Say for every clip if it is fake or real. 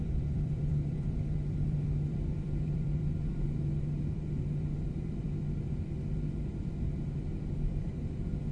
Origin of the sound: fake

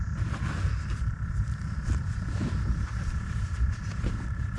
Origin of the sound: fake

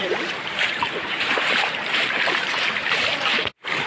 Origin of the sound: fake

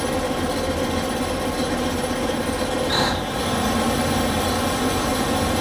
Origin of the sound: real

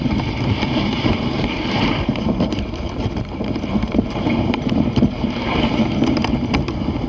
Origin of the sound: fake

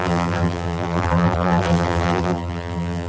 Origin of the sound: fake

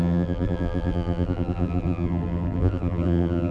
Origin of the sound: fake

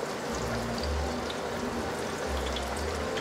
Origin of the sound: real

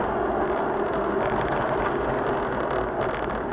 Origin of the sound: real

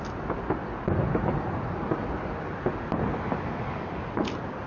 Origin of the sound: real